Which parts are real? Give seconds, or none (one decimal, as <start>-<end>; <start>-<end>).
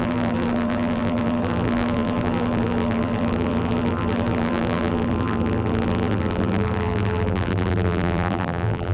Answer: none